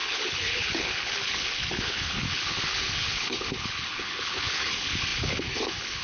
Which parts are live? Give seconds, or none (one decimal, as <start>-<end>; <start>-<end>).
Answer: none